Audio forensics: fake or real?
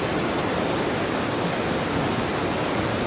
real